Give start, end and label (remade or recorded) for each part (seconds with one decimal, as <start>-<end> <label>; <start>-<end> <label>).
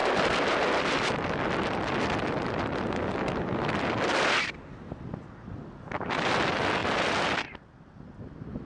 0.0-8.6 recorded